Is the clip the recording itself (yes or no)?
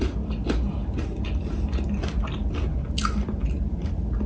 yes